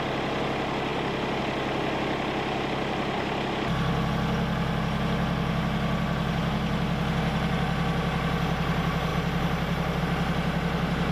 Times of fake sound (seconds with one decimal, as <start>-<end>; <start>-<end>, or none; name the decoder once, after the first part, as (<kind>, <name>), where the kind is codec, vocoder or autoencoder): none